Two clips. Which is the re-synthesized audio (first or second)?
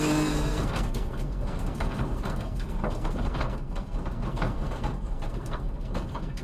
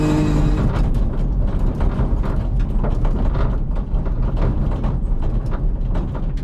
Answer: first